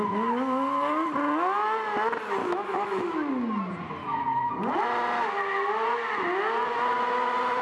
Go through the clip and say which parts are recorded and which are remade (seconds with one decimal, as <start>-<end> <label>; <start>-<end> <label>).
0.0-2.4 recorded; 2.4-3.3 remade; 3.3-4.0 recorded; 4.0-4.5 remade; 4.5-7.6 recorded